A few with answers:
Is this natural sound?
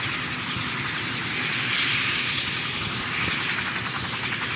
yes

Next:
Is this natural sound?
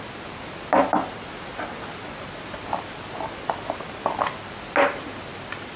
yes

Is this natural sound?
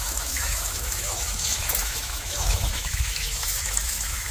no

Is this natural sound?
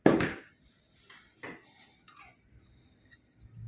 yes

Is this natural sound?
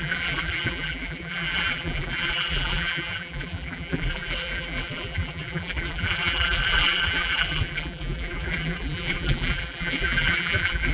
no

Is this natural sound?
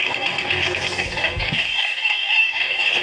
no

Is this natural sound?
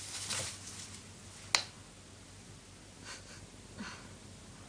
yes